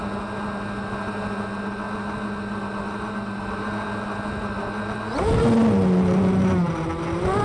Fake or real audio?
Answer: real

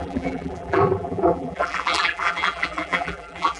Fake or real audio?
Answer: fake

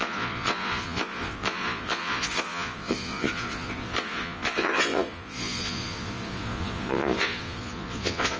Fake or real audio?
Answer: fake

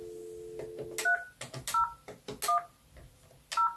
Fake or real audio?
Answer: real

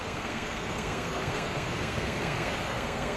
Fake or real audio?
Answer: fake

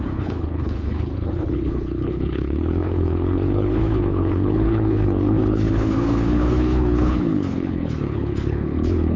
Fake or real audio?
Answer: fake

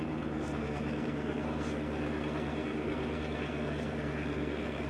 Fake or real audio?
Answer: fake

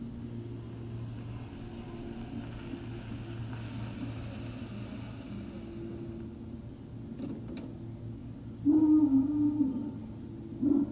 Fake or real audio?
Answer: real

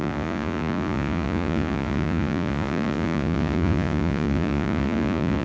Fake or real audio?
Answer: fake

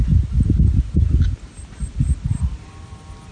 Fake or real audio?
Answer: real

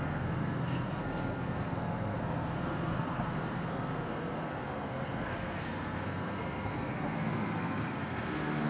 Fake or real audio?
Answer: fake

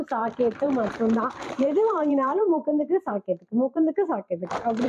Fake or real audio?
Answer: fake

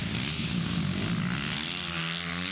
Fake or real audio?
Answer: real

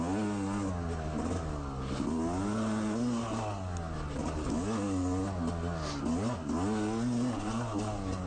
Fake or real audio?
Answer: real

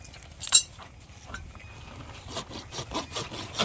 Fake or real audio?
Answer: real